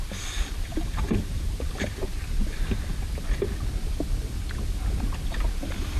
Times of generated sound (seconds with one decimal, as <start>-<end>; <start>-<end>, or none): 0.7-1.7